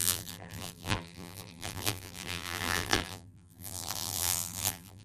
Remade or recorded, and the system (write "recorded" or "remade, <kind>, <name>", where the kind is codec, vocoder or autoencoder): remade, vocoder, BigVGAN v2